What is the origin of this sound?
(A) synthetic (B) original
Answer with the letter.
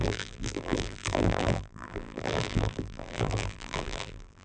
A